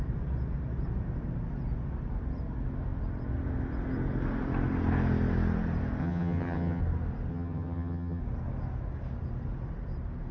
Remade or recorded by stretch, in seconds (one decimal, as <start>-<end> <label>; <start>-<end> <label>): 0.0-6.0 recorded; 6.0-6.8 remade; 6.8-7.3 recorded; 7.3-8.2 remade; 8.2-10.3 recorded